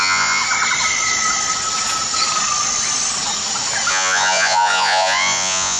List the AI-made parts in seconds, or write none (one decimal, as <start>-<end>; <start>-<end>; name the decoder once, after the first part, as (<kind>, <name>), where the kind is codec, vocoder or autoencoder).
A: 0.0-0.4 (vocoder, Vocos); 3.9-5.8